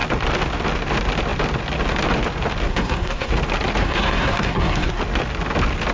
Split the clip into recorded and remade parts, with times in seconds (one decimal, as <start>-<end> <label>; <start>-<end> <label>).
0.0-2.7 recorded; 2.7-3.3 remade; 3.3-3.8 recorded; 3.8-5.0 remade; 5.0-5.9 recorded